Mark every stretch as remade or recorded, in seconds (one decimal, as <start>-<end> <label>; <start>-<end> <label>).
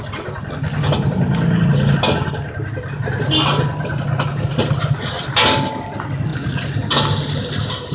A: 0.0-7.9 recorded